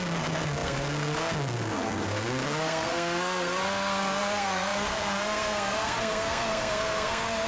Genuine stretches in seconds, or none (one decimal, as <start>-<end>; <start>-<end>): none